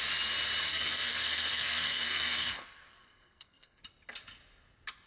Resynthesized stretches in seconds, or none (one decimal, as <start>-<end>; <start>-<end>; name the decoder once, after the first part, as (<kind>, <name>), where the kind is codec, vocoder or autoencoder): 0.7-3.8 (codec, SNAC)